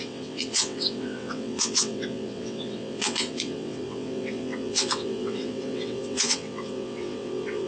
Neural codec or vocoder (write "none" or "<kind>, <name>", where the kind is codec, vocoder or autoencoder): vocoder, WaveNeXt